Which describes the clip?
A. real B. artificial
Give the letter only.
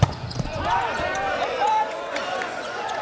B